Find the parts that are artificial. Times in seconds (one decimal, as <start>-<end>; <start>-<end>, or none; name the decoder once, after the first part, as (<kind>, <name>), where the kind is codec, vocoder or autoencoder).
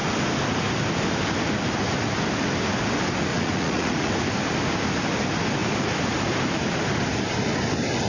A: 3.3-4.1 (vocoder, Vocos)